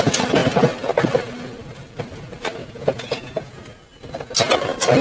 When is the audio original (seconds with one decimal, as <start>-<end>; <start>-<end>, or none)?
0.0-2.6; 3.6-5.0